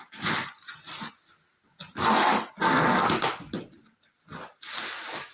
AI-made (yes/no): no